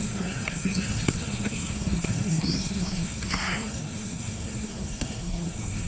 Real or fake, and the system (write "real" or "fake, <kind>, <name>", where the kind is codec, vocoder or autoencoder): fake, codec, SNAC